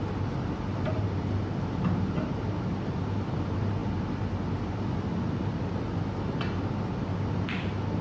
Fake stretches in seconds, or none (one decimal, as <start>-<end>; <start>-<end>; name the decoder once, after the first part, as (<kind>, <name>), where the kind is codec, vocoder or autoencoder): none